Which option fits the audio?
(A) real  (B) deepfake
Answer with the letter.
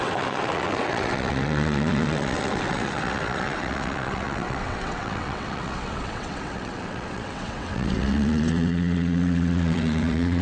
B